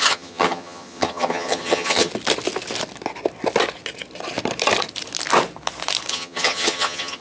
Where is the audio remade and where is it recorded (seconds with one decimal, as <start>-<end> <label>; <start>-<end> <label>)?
0.0-2.1 remade; 2.1-6.1 recorded; 6.1-7.2 remade